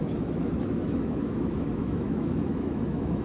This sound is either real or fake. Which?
fake